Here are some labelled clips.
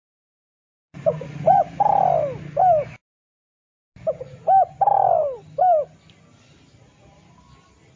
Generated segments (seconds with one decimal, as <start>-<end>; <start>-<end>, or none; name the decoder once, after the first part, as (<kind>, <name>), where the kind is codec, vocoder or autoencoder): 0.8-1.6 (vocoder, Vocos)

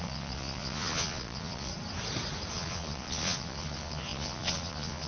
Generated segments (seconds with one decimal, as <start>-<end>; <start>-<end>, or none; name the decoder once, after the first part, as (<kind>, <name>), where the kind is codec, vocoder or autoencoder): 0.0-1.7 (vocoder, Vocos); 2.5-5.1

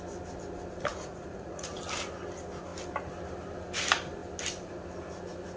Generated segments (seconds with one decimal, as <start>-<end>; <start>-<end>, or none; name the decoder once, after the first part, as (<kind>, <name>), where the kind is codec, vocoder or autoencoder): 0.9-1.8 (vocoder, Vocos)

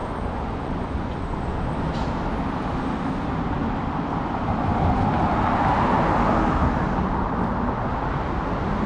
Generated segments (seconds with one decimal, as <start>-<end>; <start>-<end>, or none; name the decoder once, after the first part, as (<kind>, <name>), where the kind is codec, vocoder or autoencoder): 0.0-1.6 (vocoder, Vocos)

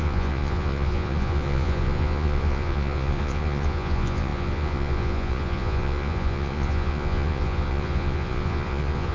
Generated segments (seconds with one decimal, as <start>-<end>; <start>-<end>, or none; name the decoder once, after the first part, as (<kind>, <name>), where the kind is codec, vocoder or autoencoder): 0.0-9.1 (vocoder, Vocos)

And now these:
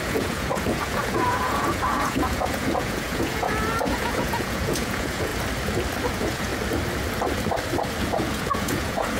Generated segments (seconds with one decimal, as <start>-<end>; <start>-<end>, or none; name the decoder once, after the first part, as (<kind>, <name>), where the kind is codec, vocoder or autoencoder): 0.0-5.3 (vocoder, Vocos); 6.1-6.5; 8.0-9.2

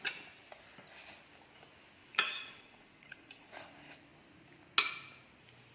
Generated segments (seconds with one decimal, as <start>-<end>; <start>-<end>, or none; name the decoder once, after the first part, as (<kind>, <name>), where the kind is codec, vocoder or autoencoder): 2.0-3.6 (vocoder, Vocos)

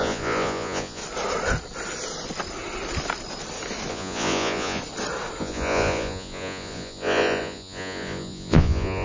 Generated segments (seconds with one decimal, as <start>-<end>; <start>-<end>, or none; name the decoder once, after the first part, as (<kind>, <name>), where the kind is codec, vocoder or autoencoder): 0.0-1.0 (vocoder, Vocos); 3.9-4.8; 5.4-9.0